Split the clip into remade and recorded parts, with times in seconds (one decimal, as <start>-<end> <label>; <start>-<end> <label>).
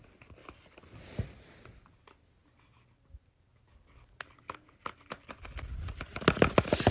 0.0-6.9 recorded